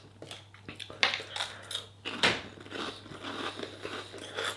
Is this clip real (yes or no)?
yes